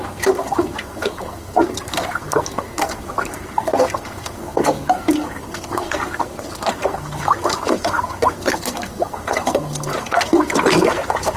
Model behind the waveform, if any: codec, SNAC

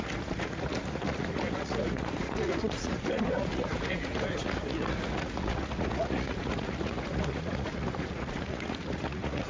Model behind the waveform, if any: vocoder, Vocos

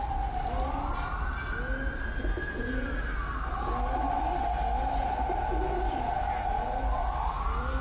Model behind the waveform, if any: none